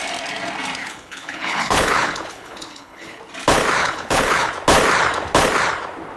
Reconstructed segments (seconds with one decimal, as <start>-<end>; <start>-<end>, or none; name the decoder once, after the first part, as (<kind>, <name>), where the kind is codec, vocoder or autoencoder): 0.8-3.2 (codec, HILCodec); 3.8-4.5